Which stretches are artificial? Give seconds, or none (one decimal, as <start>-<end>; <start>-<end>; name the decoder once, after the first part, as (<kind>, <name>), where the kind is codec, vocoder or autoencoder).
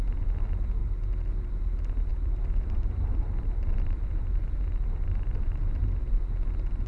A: 0.8-1.6 (vocoder, BigVGAN v2); 2.1-6.2